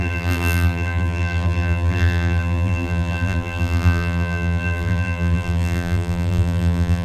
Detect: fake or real fake